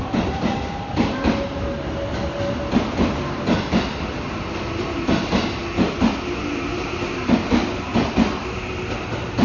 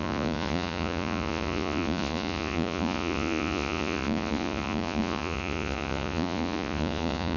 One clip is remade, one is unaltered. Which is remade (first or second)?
second